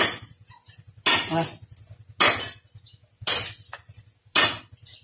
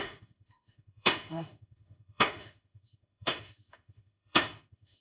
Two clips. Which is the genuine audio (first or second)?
first